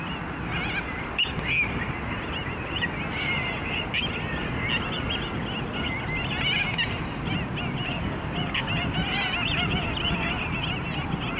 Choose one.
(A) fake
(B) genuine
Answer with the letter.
B